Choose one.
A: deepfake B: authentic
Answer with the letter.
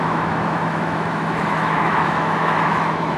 A